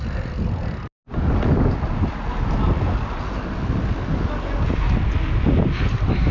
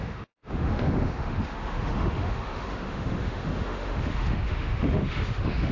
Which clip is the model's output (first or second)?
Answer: second